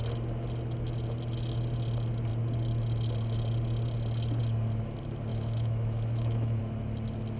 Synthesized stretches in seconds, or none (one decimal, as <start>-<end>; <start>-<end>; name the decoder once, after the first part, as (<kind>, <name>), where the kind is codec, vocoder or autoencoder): 5.3-6.6 (autoencoder, DAC-VAE)